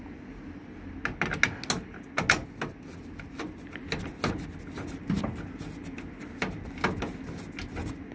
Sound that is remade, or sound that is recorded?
recorded